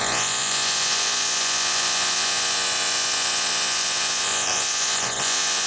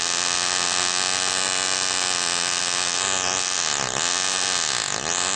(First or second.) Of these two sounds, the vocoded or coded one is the first